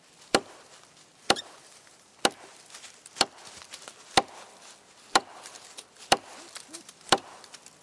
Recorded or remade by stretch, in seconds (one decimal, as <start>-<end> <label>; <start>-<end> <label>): 0.0-1.1 recorded; 1.1-2.1 remade; 2.1-7.8 recorded